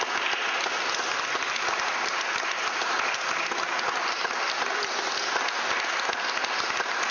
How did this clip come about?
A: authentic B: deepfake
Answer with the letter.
A